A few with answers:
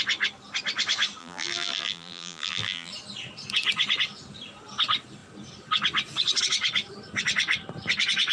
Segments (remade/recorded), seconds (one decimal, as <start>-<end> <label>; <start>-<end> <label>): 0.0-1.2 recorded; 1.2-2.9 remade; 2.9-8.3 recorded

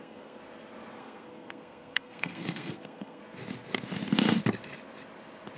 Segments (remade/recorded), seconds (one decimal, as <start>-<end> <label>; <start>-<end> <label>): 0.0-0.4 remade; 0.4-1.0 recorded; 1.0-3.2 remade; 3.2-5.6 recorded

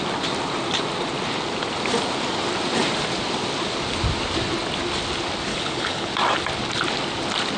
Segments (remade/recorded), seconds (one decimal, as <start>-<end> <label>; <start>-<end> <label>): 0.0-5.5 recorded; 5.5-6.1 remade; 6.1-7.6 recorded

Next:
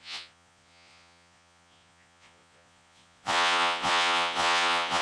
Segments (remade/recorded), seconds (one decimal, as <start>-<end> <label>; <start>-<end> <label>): 0.0-5.0 remade

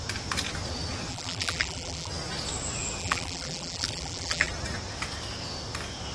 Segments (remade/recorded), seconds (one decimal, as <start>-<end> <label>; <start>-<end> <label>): 0.0-1.1 recorded; 1.1-2.1 remade; 2.1-3.0 recorded; 3.0-4.5 remade; 4.5-6.1 recorded

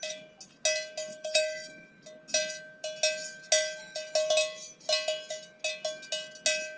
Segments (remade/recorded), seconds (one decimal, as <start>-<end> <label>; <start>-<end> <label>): 0.0-1.1 recorded; 1.1-1.9 remade; 1.9-6.8 recorded